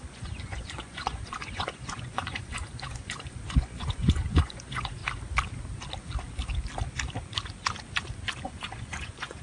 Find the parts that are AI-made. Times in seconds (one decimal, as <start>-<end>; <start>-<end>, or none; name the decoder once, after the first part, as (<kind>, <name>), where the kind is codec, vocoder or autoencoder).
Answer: 0.0-5.0 (vocoder, Vocos); 8.5-9.4

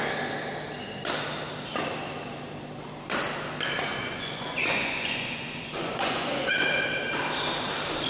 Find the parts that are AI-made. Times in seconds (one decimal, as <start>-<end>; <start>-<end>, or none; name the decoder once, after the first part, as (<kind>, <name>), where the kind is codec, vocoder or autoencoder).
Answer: 4.0-6.5 (vocoder, Vocos)

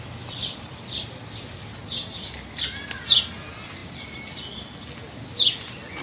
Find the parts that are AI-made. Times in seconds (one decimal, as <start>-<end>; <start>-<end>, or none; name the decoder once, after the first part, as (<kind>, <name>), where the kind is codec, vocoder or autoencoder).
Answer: none

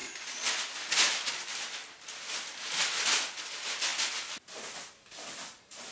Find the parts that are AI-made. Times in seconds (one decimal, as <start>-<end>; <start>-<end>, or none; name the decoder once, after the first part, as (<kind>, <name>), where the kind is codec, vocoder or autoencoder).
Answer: none

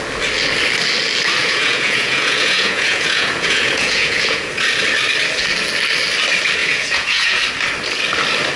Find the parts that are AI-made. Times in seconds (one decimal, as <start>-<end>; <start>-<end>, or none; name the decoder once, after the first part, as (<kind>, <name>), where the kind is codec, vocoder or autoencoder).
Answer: 1.4-4.5 (vocoder, Vocos); 6.6-7.4